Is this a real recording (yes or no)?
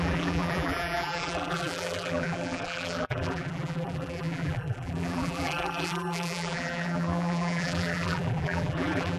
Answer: no